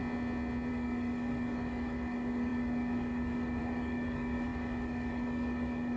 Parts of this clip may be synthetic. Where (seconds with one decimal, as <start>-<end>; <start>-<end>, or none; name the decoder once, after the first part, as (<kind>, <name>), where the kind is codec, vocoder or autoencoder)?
0.7-6.0 (codec, DAC)